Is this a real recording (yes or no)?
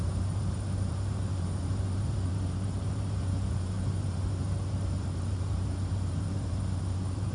no